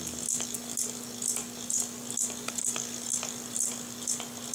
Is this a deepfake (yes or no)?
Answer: no